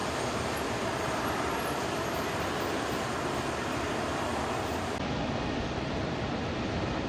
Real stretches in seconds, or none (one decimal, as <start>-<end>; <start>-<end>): 0.0-7.1